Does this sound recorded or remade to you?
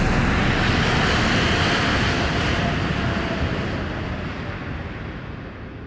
recorded